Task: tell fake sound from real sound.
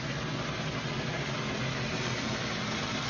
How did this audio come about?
real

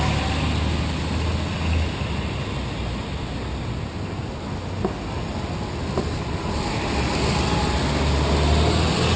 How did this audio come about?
real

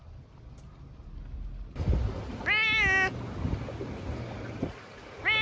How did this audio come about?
real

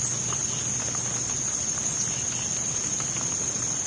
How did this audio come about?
real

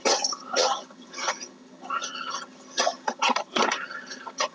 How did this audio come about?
fake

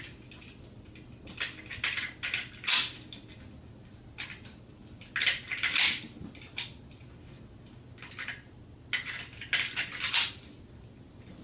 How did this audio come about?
real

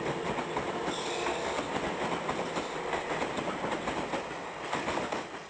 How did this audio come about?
real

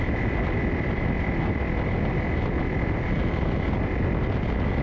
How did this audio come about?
real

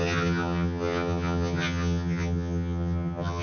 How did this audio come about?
fake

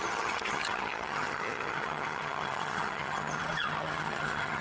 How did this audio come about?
fake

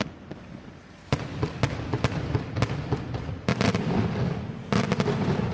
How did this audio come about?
real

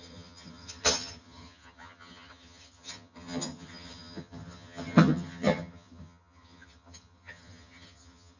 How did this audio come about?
fake